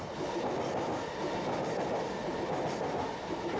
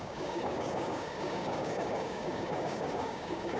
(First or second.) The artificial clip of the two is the second